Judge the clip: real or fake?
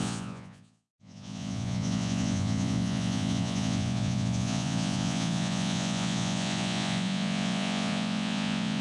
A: fake